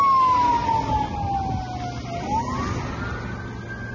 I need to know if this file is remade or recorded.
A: recorded